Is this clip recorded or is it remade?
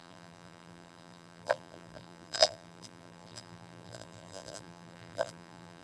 remade